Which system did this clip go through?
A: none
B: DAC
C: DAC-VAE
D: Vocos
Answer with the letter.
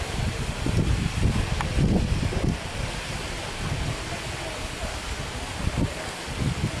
A